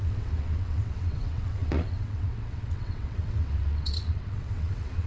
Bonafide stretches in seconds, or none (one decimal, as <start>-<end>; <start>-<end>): none